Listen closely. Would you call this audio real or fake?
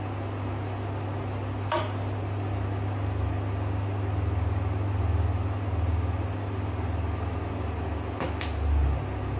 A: real